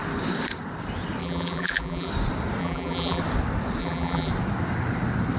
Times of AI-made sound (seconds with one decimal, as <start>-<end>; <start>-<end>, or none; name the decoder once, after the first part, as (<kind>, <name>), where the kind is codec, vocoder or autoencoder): 1.2-2.1 (vocoder, BigVGAN v2); 2.6-3.2; 3.8-4.3